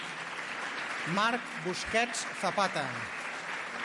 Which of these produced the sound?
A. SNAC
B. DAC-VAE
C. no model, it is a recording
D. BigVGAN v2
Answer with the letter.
D